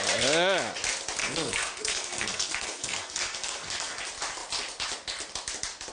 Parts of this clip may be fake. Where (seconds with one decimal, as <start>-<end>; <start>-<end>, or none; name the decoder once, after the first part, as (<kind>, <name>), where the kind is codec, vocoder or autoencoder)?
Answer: 1.2-4.0 (codec, SNAC)